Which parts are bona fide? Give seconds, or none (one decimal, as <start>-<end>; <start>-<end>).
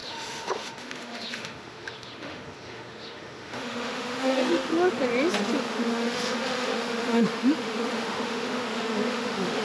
4.7-5.6